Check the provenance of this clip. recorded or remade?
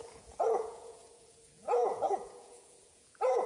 remade